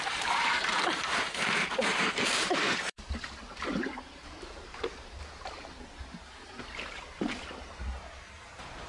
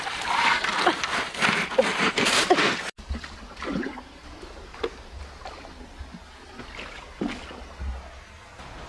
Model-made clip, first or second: first